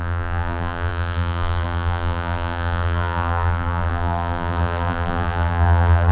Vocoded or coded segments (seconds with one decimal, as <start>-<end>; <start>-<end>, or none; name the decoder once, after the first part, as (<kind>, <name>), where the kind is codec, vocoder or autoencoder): 0.0-6.1 (vocoder, BigVGAN v2)